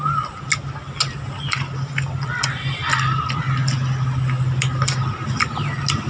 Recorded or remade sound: recorded